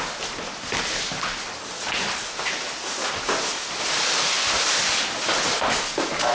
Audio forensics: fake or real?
real